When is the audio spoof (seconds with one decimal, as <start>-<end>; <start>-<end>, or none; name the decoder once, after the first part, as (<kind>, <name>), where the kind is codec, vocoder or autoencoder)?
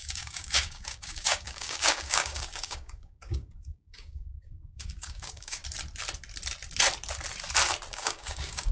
0.0-5.6 (codec, DAC); 7.9-8.7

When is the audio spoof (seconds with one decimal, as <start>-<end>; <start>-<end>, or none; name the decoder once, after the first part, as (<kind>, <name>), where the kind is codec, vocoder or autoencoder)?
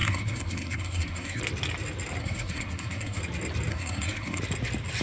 0.0-1.4 (codec, SNAC); 2.2-3.2; 3.7-4.4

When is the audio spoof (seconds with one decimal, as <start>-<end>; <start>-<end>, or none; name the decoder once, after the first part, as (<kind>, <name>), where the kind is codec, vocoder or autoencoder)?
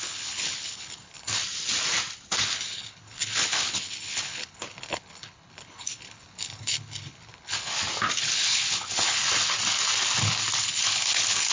0.0-1.4 (codec, HILCodec); 2.4-7.7; 8.2-9.2; 10.6-11.5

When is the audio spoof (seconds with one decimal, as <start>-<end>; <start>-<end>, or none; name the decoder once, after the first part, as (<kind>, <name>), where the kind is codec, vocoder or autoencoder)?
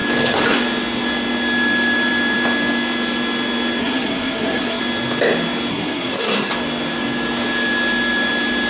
3.8-4.8 (codec, SNAC); 5.7-6.5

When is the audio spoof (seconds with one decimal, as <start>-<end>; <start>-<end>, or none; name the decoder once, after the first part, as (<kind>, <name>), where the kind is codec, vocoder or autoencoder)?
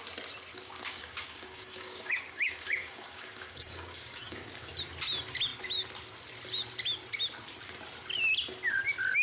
0.5-4.7 (codec, DAC)